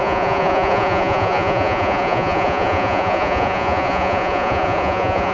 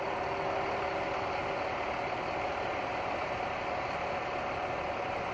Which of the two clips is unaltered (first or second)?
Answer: second